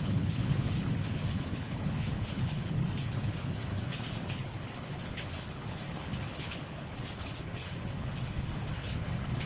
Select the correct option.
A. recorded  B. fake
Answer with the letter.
B